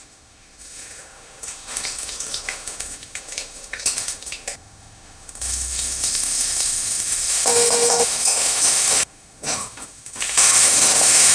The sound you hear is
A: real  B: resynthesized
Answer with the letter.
B